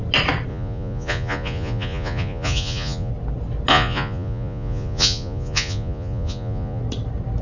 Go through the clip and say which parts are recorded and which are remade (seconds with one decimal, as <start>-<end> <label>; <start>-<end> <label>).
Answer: 0.0-0.5 recorded; 0.5-3.1 remade; 3.1-3.7 recorded; 3.7-6.8 remade; 6.8-7.4 recorded